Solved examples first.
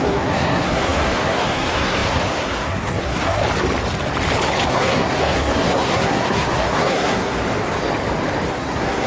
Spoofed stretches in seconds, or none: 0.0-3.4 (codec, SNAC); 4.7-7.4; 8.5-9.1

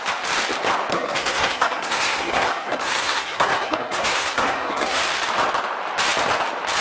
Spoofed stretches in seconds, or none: 0.9-5.0 (codec, SNAC)

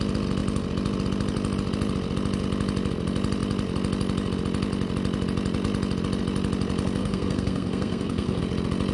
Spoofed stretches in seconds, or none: 7.0-8.4 (codec, SNAC)

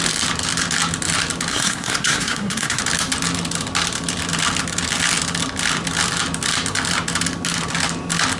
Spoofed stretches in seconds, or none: 1.5-2.8 (codec, SNAC)

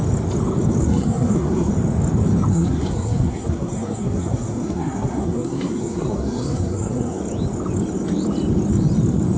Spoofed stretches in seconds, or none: 0.8-1.7 (codec, SNAC); 2.5-7.2

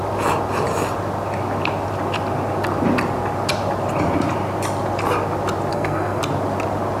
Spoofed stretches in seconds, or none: 5.7-6.2 (codec, SNAC)

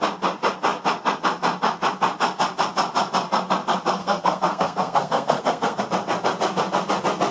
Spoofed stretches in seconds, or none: 4.0-5.8 (codec, SNAC)

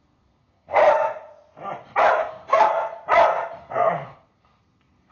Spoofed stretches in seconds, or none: 0.0-0.8 (codec, SNAC); 2.2-2.7; 3.6-5.1